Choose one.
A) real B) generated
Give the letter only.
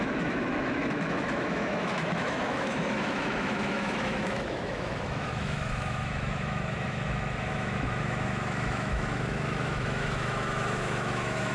B